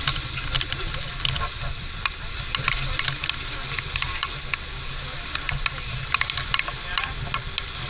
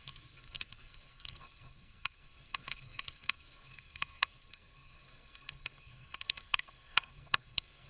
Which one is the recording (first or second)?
first